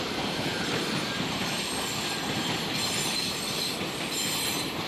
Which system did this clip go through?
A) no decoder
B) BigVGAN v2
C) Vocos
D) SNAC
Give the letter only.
B